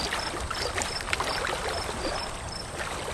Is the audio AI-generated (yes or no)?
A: no